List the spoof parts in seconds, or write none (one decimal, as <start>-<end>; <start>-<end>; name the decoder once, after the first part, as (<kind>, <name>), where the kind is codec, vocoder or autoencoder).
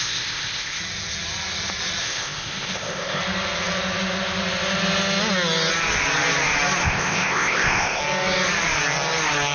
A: 0.0-0.8 (codec, ZipCodec); 2.0-3.2; 6.8-8.0